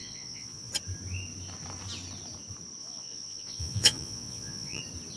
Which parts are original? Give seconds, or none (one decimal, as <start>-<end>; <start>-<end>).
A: 0.7-2.8; 4.8-5.2